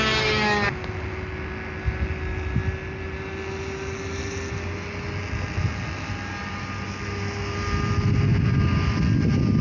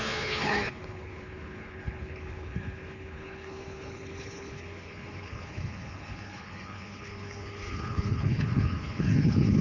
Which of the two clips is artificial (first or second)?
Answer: second